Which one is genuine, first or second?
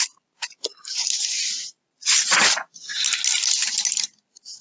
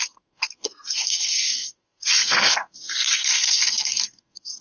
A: first